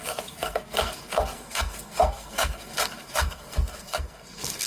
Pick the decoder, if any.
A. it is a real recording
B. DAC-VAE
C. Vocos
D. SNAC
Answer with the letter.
D